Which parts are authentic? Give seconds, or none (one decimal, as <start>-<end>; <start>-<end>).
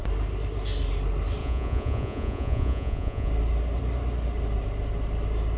0.0-1.4; 3.3-5.6